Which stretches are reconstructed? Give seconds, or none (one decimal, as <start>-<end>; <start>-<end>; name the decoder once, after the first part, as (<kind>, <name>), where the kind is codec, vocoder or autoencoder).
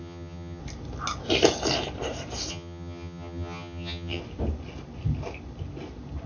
0.0-0.6 (vocoder, HiFi-GAN); 2.5-4.2